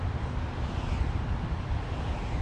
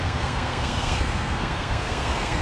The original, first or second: first